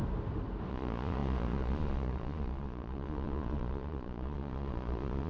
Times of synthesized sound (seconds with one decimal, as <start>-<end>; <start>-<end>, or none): 0.7-5.3